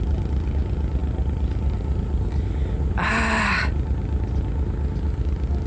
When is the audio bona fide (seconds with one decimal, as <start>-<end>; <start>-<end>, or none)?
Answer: 0.0-5.7